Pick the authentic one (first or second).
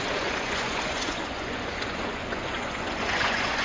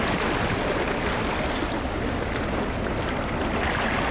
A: second